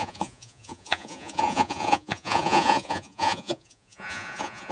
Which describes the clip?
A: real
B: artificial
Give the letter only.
B